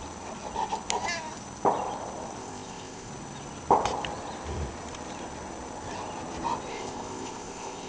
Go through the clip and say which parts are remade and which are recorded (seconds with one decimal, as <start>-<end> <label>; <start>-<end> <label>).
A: 0.0-2.4 recorded; 2.4-3.1 remade; 3.1-6.7 recorded; 6.7-7.9 remade